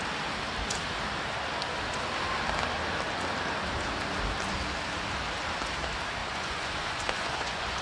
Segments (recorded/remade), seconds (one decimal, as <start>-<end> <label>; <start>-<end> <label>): 0.0-6.2 recorded; 6.2-7.8 remade

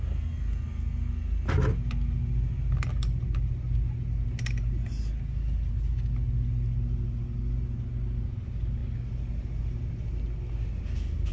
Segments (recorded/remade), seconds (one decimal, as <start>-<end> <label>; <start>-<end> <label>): 0.0-11.3 recorded

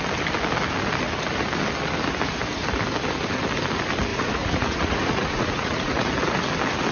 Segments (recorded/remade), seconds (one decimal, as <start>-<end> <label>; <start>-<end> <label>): 0.0-4.1 recorded; 4.1-6.1 remade; 6.1-6.9 recorded

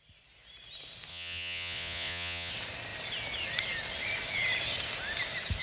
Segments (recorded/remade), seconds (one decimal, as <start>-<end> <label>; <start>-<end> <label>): 0.0-1.1 recorded; 1.1-2.5 remade; 2.5-5.6 recorded

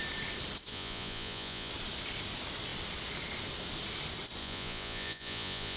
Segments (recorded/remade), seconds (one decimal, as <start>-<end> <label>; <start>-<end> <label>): 0.0-0.7 recorded; 0.7-1.7 remade; 1.7-4.4 recorded; 4.4-5.8 remade

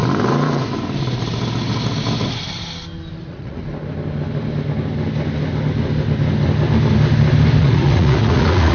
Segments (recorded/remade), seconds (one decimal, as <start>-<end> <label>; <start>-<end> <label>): 0.0-3.2 recorded; 3.2-3.6 remade; 3.6-7.6 recorded; 7.6-8.7 remade

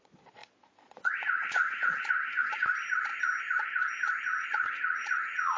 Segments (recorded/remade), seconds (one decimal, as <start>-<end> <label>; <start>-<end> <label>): 0.0-3.1 remade; 3.1-4.2 recorded; 4.2-5.6 remade

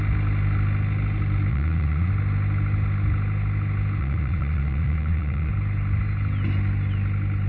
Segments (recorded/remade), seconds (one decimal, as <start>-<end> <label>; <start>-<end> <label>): 0.0-1.5 recorded; 1.5-2.1 remade; 2.1-4.0 recorded; 4.0-5.5 remade; 5.5-7.5 recorded